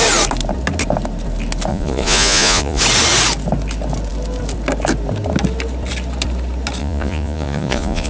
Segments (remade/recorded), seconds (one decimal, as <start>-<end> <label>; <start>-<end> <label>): 0.0-1.7 recorded; 1.7-2.8 remade; 2.8-6.8 recorded; 6.8-8.1 remade